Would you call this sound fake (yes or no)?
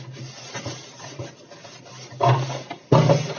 no